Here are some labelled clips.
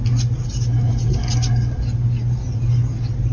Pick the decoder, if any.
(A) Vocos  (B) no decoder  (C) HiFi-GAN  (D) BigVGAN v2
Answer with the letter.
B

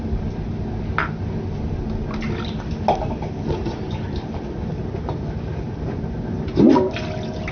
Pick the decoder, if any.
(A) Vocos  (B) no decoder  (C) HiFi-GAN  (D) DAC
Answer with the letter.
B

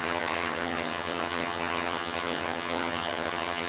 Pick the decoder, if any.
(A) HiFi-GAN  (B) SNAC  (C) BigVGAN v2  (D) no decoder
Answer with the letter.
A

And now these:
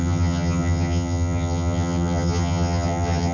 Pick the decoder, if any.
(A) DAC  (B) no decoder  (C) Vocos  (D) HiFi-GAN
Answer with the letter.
D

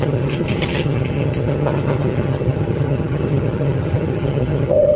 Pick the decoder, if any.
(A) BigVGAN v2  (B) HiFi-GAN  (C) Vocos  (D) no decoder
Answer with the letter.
B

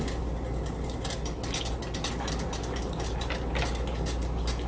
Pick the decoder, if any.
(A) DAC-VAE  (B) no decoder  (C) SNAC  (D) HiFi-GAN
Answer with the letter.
B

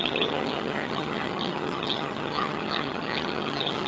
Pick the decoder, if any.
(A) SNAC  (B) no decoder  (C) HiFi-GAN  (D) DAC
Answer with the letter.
C